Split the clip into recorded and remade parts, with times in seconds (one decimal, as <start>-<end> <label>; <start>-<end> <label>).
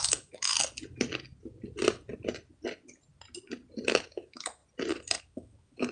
0.0-0.5 remade; 0.5-4.0 recorded; 4.0-4.6 remade; 4.6-5.2 recorded; 5.2-5.9 remade